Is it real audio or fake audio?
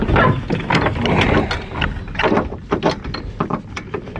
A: real